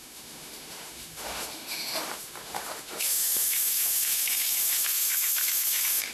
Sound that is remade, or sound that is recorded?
remade